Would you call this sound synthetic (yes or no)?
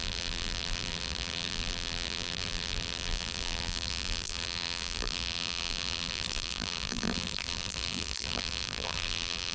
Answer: yes